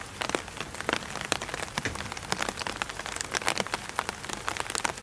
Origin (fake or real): real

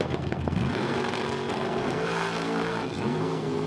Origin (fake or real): fake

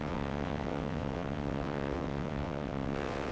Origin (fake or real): fake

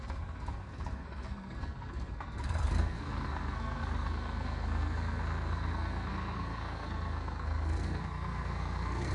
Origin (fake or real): fake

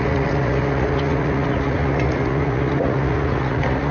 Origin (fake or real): fake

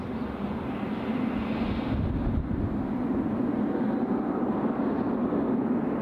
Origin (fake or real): real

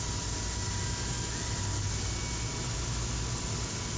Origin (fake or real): real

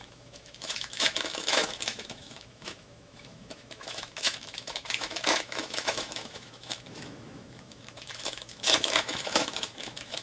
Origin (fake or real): fake